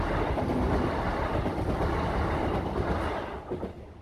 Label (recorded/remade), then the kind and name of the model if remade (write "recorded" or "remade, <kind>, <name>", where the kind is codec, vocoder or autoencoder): recorded